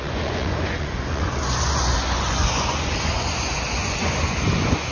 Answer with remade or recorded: remade